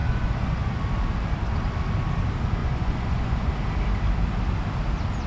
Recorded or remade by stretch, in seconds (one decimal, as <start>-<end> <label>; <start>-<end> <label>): 0.0-0.7 remade; 0.7-2.6 recorded; 2.6-3.5 remade; 3.5-5.3 recorded